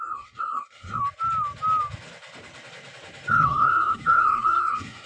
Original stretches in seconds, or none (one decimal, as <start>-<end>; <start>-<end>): 1.0-3.3